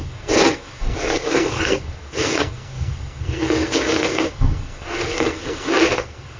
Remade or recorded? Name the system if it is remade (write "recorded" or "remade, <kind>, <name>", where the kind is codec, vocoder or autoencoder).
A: remade, codec, SNAC